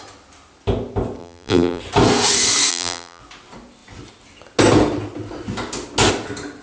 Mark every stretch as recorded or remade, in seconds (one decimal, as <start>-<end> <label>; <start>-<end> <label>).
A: 0.0-1.2 recorded; 1.2-1.8 remade; 1.8-2.7 recorded; 2.7-3.2 remade; 3.2-6.6 recorded